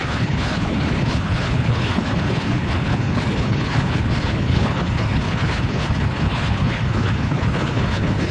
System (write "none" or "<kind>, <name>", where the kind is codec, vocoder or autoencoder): codec, HILCodec